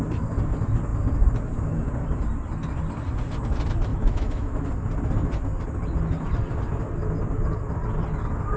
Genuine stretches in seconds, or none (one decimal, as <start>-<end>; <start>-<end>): 0.0-3.9; 4.7-8.6